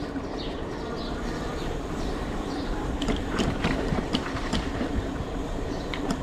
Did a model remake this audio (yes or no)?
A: yes